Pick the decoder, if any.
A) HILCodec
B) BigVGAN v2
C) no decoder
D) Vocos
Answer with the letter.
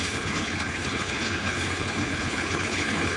A